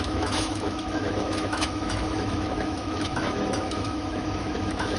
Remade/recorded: remade